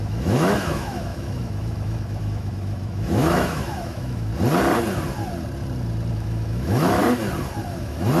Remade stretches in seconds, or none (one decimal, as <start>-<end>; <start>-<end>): 0.0-4.3; 6.1-7.0; 7.7-8.2